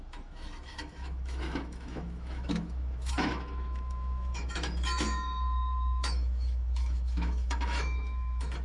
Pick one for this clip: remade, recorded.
remade